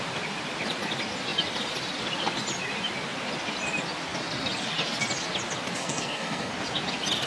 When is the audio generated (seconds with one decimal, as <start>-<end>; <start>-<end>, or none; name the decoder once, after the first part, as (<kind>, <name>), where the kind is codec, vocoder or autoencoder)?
5.8-6.5 (codec, SNAC)